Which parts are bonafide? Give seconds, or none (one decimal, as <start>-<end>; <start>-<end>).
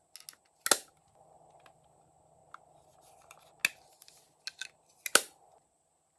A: 0.0-6.2